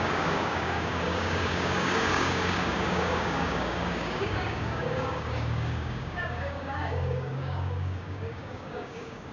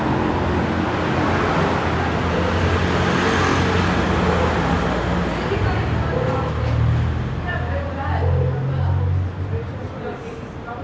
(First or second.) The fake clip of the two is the first